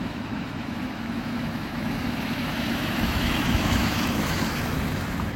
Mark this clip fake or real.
fake